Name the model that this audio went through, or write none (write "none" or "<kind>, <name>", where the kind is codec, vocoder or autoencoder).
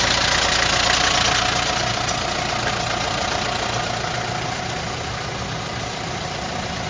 none